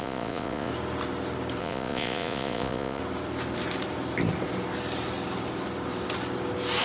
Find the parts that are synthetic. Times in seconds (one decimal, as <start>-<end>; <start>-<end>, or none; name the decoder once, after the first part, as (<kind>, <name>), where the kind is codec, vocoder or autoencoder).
0.0-0.7 (vocoder, Vocos); 1.6-3.0